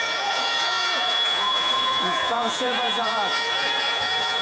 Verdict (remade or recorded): remade